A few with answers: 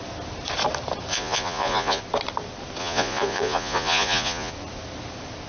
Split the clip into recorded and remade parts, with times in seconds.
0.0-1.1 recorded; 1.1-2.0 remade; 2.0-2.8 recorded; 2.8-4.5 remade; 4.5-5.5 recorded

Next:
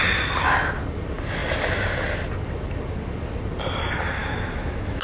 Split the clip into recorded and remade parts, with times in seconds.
0.0-4.2 recorded; 4.2-5.0 remade

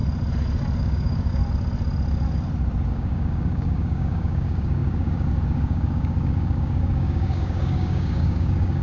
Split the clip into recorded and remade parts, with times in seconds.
0.0-0.8 recorded; 0.8-1.4 remade; 1.4-2.9 recorded; 2.9-8.8 remade